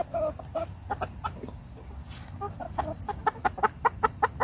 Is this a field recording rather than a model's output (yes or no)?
yes